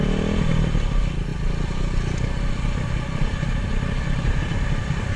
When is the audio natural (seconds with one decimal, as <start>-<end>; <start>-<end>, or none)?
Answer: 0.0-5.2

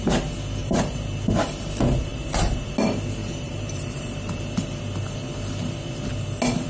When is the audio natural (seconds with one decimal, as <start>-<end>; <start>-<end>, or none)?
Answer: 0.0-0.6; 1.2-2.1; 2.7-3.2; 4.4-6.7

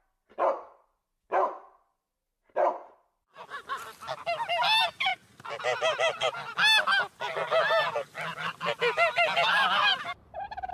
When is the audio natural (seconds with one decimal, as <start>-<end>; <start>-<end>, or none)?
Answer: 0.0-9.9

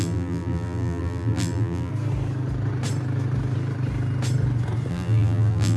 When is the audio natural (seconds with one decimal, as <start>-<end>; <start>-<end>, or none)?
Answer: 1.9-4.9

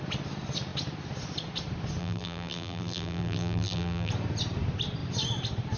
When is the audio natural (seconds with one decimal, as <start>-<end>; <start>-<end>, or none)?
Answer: 0.0-2.0; 4.1-5.8

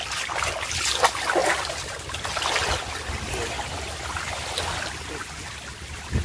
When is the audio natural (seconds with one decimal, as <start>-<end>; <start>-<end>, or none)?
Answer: 0.0-6.2

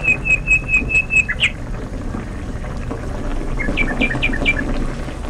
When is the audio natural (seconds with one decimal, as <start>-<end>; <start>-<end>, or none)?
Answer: 0.0-3.3; 4.1-5.3